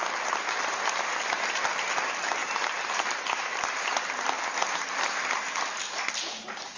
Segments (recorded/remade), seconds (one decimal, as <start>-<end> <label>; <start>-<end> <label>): 0.0-2.4 recorded; 2.4-3.4 remade; 3.4-6.8 recorded